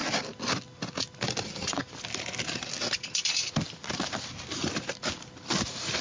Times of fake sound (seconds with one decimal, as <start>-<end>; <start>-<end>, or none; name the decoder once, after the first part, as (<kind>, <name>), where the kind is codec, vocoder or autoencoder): none